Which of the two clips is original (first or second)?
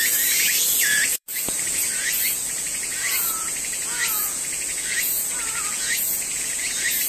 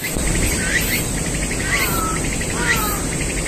second